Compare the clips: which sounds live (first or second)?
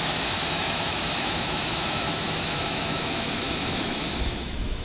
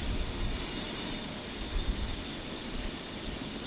second